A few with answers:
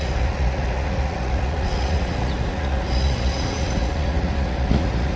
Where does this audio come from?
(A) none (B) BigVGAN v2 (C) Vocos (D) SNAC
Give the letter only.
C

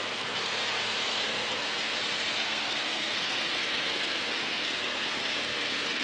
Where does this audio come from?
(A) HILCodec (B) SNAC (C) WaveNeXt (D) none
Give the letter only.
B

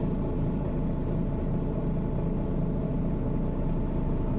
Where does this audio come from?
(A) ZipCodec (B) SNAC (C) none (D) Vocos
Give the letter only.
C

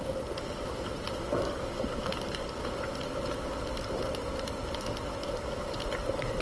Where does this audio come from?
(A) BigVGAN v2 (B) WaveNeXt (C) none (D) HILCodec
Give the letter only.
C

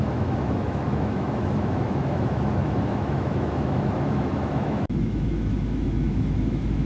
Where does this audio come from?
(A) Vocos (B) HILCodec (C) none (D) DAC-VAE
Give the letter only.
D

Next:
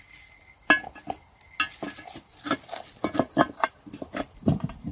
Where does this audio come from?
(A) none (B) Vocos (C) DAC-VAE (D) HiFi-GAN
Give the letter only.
A